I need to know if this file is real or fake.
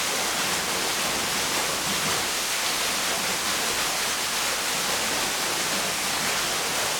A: real